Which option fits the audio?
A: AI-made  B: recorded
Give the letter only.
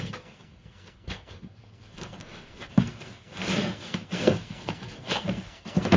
A